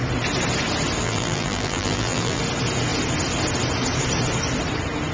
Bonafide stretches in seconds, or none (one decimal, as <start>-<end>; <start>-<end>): 0.0-1.0; 2.4-5.1